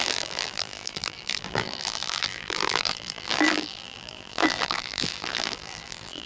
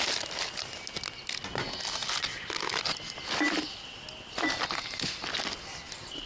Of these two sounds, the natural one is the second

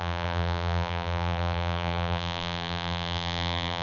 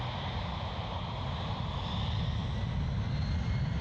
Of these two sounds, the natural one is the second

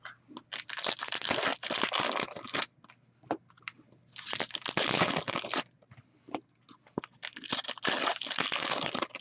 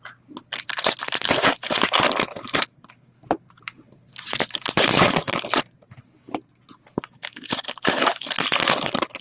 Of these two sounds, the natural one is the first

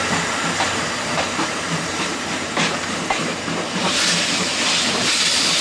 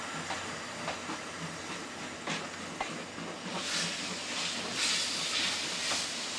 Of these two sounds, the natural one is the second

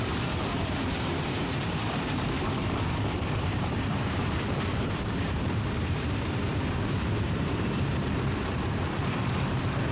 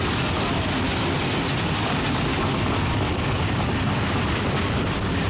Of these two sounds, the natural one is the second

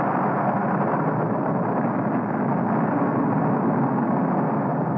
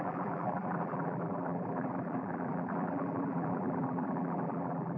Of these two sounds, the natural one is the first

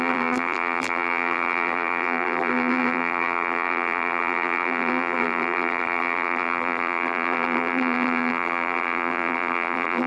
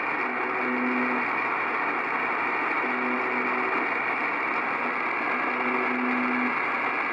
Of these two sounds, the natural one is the second